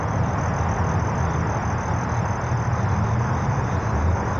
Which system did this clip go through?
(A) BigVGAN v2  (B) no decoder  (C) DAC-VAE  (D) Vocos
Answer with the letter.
B